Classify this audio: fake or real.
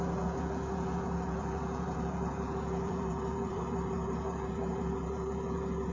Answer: fake